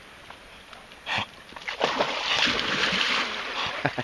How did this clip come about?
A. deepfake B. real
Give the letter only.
B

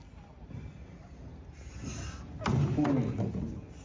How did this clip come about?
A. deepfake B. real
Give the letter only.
B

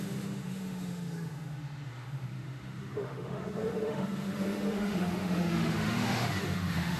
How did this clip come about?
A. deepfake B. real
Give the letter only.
A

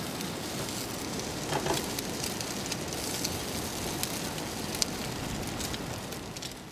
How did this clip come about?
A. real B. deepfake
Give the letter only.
A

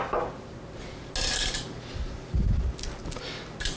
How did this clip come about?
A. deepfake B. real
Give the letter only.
B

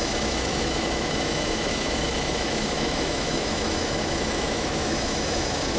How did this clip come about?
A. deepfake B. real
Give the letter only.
A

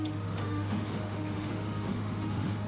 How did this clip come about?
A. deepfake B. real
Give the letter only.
A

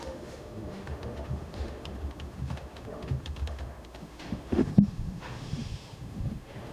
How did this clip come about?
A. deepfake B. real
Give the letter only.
A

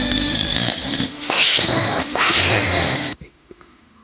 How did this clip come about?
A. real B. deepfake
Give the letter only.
B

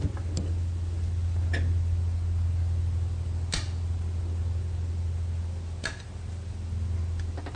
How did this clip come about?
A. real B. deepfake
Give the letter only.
A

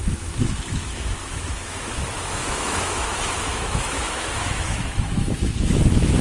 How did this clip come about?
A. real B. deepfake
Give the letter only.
B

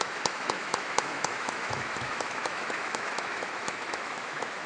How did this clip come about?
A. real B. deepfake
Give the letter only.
B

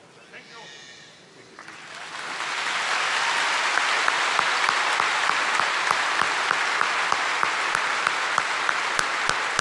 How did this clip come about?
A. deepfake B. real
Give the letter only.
B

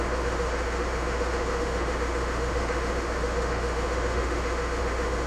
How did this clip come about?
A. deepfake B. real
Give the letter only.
A